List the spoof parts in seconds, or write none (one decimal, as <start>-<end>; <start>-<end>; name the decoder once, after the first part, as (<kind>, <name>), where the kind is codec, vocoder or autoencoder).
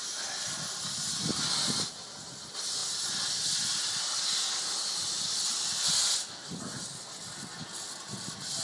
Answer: none